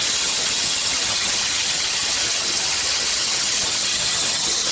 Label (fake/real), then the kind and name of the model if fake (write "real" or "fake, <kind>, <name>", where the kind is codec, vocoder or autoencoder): fake, vocoder, HiFi-GAN